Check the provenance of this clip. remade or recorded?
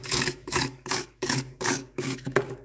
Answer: remade